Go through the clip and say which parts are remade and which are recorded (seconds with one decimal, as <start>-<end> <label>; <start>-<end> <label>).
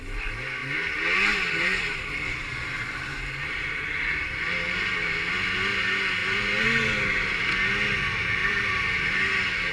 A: 0.0-0.6 recorded; 0.6-5.3 remade; 5.3-6.2 recorded; 6.2-7.4 remade; 7.4-8.4 recorded; 8.4-9.7 remade